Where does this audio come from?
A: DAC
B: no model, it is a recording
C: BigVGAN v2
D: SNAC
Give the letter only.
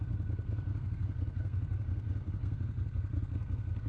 D